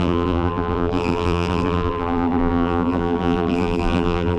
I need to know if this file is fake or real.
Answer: fake